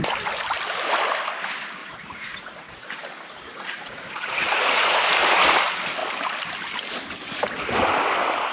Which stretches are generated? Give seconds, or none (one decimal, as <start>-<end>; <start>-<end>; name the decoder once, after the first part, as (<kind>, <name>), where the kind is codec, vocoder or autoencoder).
1.8-2.9 (vocoder, Vocos); 3.5-5.0